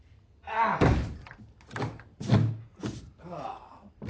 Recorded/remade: recorded